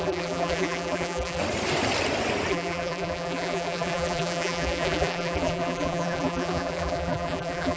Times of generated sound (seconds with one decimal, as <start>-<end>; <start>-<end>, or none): 0.0-1.4; 2.5-7.8